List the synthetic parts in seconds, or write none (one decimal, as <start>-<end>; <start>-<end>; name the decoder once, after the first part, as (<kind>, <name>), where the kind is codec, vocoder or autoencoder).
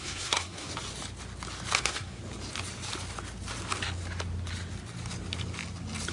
0.0-0.7 (codec, SNAC); 1.8-2.2